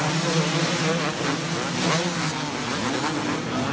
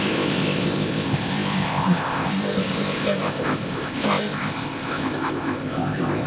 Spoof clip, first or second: second